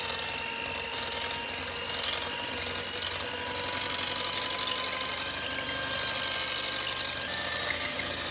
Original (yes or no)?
yes